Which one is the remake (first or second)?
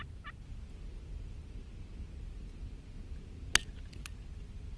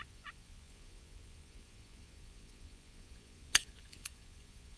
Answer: second